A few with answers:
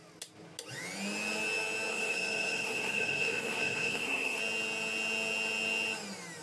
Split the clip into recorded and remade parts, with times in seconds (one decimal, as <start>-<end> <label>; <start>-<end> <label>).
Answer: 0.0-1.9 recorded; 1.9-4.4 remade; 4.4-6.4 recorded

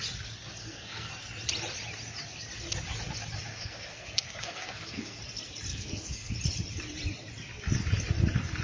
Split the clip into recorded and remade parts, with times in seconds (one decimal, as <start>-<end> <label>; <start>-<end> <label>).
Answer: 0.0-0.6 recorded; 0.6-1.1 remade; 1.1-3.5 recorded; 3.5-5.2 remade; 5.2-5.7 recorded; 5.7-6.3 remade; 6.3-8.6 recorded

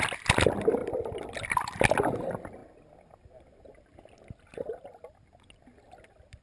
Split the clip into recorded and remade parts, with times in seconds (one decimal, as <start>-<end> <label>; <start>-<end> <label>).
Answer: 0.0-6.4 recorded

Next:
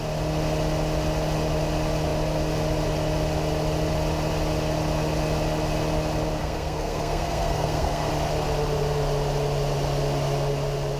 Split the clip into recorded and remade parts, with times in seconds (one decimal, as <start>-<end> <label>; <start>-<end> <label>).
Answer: 0.0-6.4 recorded; 6.4-8.1 remade; 8.1-11.0 recorded

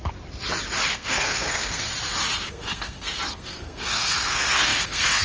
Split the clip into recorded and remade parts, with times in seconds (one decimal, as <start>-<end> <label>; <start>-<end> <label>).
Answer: 0.0-0.9 recorded; 0.9-1.9 remade; 1.9-2.5 recorded; 2.5-5.2 remade